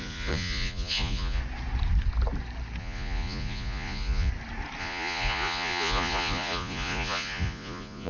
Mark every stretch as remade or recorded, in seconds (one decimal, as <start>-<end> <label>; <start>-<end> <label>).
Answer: 0.0-1.4 remade; 1.4-2.8 recorded; 2.8-4.3 remade; 4.3-4.8 recorded; 4.8-8.1 remade